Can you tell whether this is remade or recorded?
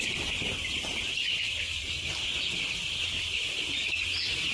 remade